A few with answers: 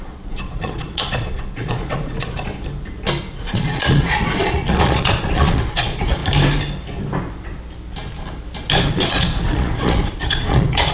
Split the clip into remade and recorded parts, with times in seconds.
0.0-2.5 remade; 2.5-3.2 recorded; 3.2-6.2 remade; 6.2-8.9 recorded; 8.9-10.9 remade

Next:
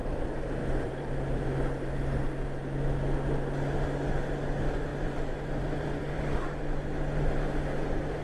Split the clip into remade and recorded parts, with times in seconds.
0.0-1.4 remade; 1.4-4.9 recorded; 4.9-6.6 remade; 6.6-8.2 recorded

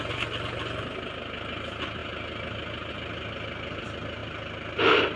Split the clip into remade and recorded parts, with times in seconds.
0.0-5.2 recorded

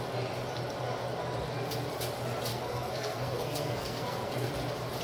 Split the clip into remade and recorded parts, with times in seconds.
0.0-2.5 recorded; 2.5-4.5 remade; 4.5-5.0 recorded

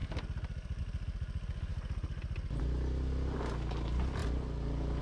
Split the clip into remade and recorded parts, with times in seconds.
0.0-0.8 remade; 0.8-5.0 recorded

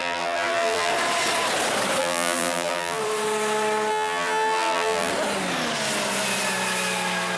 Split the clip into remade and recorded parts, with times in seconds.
0.0-0.9 remade; 0.9-2.0 recorded; 2.0-3.0 remade; 3.0-3.9 recorded; 3.9-5.1 remade; 5.1-7.4 recorded

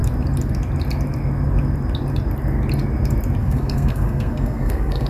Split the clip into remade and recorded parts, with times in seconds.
0.0-3.4 recorded; 3.4-5.1 remade